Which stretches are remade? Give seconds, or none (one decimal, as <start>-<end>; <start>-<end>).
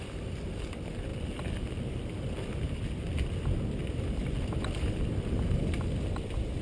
none